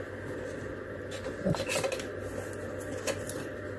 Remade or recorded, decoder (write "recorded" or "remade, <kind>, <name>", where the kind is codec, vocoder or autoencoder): recorded